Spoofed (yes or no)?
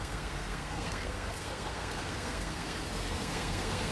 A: yes